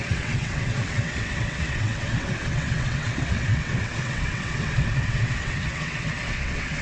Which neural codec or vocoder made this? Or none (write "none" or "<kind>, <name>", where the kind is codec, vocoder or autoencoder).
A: vocoder, WaveNeXt